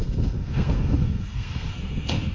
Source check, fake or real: fake